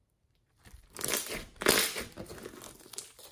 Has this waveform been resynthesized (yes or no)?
no